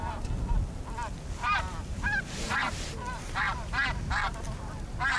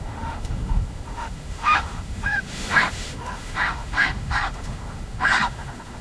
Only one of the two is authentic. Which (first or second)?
first